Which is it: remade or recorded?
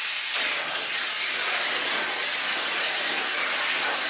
recorded